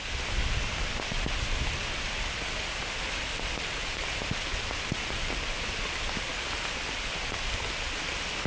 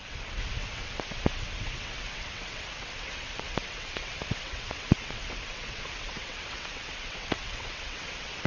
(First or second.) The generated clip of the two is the second